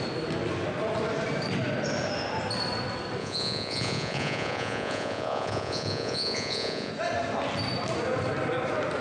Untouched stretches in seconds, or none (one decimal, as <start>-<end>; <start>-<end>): 0.0-3.2; 6.9-9.0